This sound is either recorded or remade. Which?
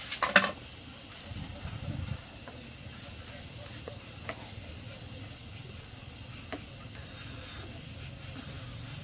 recorded